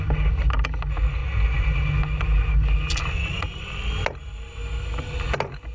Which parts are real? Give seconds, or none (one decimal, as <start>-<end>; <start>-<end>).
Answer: 0.0-5.7